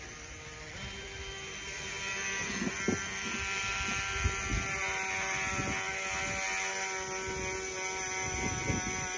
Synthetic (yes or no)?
no